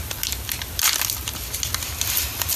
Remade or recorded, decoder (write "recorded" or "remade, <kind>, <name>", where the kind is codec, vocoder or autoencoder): recorded